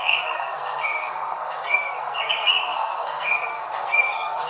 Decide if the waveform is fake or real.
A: fake